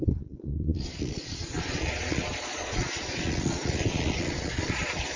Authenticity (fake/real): fake